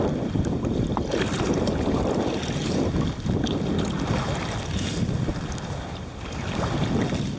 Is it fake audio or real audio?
real